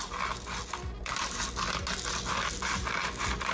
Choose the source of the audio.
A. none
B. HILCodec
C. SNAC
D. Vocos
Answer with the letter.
A